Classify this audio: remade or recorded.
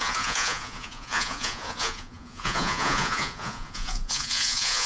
remade